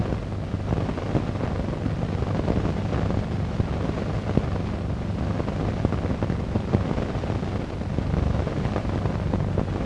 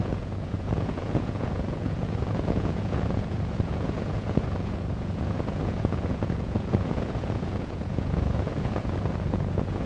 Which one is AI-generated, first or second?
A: second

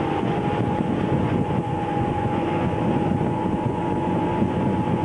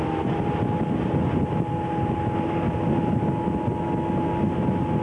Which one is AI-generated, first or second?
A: first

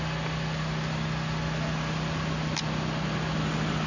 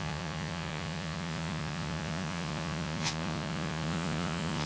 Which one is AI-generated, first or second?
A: second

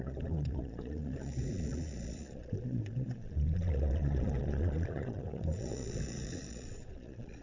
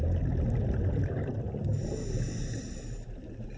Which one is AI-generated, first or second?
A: first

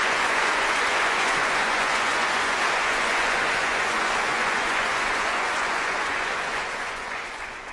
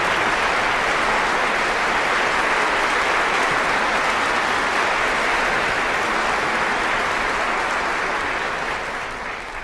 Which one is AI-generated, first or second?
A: first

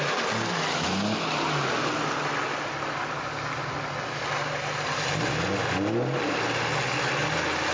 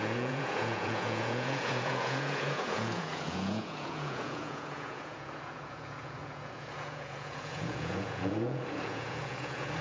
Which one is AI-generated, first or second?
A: second